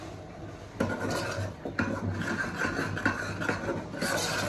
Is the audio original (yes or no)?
yes